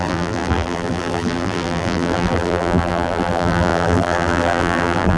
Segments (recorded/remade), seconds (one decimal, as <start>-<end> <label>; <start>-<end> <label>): 0.0-5.2 remade